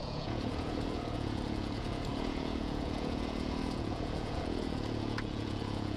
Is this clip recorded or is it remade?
remade